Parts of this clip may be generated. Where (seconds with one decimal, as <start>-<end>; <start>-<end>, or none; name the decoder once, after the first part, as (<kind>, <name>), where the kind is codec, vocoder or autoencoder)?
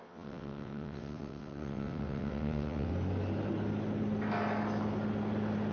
0.0-2.9 (vocoder, WaveNeXt)